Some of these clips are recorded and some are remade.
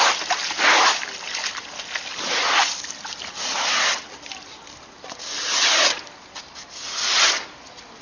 recorded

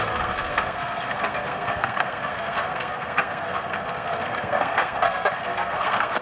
remade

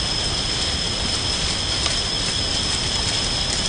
recorded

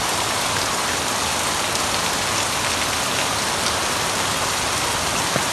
recorded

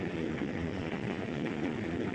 remade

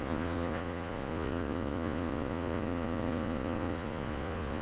remade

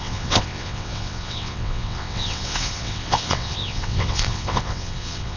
remade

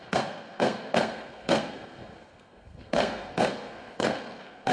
remade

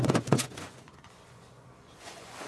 remade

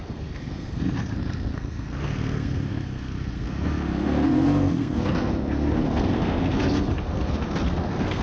remade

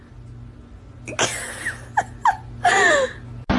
recorded